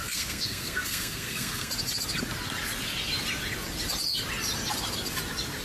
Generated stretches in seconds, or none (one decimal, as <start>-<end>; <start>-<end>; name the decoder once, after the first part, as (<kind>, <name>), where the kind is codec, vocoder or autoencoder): 0.0-1.7 (codec, SNAC)